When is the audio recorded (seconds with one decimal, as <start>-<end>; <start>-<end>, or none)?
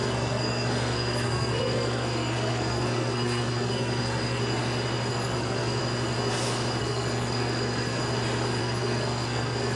4.4-5.1; 5.8-6.8; 8.0-8.6